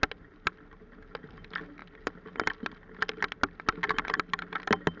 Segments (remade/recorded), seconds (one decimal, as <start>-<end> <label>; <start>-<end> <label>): 0.0-5.0 recorded